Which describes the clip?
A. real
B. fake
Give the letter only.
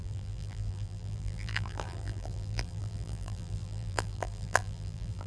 B